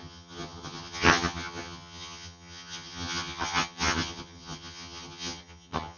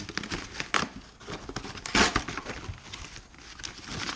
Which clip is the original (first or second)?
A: second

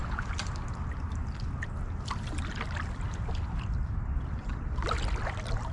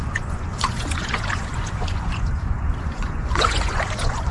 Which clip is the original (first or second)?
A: first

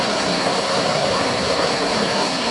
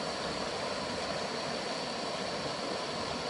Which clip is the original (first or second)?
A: second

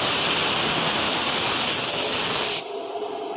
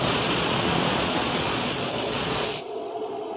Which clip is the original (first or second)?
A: first